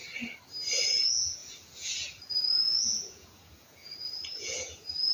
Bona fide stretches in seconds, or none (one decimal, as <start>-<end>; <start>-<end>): 0.0-0.8